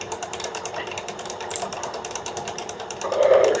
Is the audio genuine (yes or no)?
no